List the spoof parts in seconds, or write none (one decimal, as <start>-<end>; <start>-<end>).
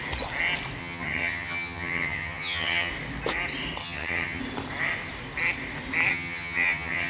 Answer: 0.8-2.9; 3.8-4.4; 6.1-7.1